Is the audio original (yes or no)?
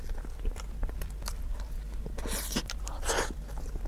yes